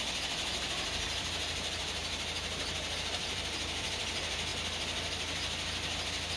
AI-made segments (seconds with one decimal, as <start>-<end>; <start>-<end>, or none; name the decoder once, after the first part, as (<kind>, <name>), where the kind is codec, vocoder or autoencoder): 0.0-2.0 (vocoder, BigVGAN v2); 3.0-4.5

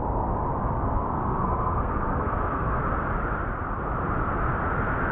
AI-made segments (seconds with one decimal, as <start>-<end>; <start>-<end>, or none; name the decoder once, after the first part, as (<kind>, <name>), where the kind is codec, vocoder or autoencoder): 0.6-2.8 (codec, SNAC)